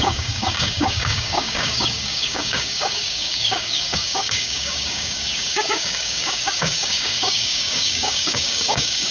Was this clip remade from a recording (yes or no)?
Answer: yes